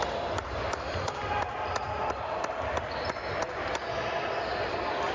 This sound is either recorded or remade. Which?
recorded